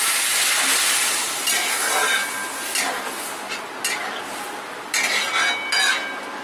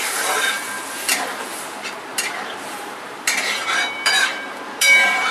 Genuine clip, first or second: first